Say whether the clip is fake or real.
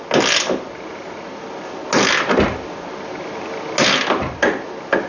real